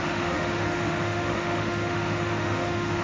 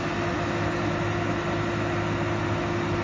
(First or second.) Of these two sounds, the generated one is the first